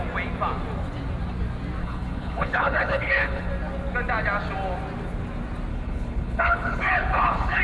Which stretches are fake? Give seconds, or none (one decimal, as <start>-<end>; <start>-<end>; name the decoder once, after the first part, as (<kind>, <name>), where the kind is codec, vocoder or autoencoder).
1.8-3.5 (codec, HILCodec); 5.7-7.6